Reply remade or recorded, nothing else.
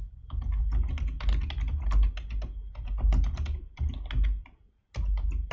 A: recorded